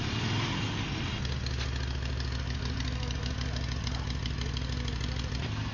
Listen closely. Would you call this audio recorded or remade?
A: recorded